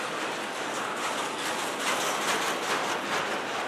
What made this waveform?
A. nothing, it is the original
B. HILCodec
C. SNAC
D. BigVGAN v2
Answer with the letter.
A